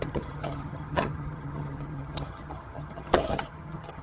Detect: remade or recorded remade